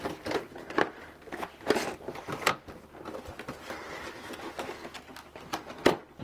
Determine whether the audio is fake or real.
real